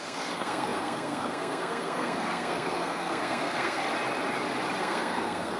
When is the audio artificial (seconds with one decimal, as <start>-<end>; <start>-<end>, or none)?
0.0-3.8; 4.8-5.6